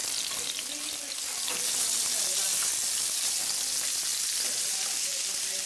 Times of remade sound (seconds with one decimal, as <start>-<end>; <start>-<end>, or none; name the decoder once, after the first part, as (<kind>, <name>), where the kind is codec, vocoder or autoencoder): none